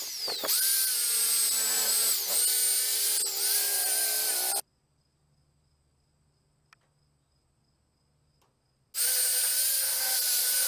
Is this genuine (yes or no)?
yes